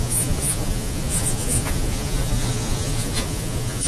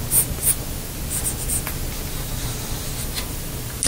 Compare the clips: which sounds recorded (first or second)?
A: second